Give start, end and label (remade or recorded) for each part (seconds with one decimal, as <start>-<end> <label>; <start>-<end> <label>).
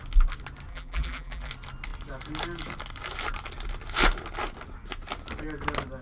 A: 0.0-0.7 recorded; 0.7-1.5 remade; 1.5-6.0 recorded